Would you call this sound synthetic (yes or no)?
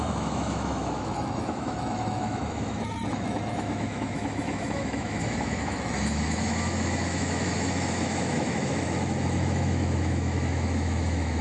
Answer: yes